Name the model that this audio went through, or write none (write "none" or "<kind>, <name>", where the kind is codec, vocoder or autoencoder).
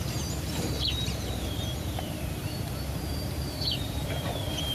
vocoder, BigVGAN v2